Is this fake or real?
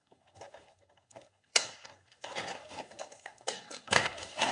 fake